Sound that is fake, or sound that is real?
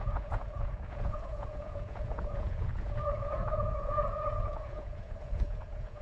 fake